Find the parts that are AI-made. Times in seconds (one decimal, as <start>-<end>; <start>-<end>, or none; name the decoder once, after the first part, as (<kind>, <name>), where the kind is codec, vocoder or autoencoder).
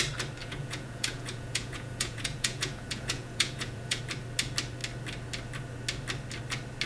0.4-4.0 (vocoder, Vocos)